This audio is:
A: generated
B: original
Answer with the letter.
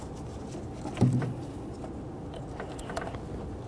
B